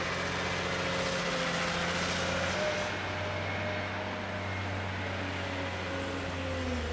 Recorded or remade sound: recorded